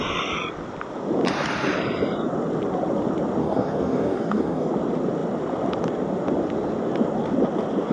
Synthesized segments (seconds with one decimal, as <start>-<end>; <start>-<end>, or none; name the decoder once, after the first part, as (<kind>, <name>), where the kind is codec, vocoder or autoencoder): 3.4-4.7 (codec, DAC)